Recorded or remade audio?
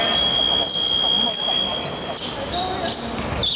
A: recorded